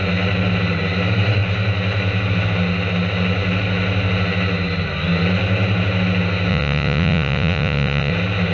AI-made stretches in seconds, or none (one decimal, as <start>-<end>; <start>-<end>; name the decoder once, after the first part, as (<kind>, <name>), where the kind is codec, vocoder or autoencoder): 6.5-8.1 (vocoder, Vocos)